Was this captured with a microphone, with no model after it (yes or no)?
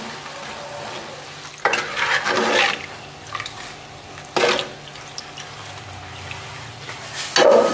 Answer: yes